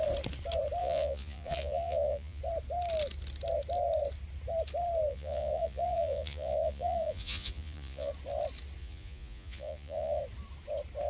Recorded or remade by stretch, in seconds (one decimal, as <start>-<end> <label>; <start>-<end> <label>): 0.0-0.8 recorded; 0.8-2.4 remade; 2.4-5.1 recorded; 5.1-8.1 remade; 8.1-8.8 recorded; 8.8-10.2 remade; 10.2-11.1 recorded